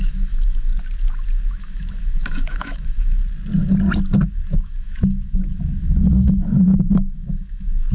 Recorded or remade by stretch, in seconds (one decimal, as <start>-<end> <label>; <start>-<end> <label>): 0.0-0.7 remade; 0.7-1.5 recorded; 1.5-3.2 remade; 3.2-4.3 recorded; 4.3-7.9 remade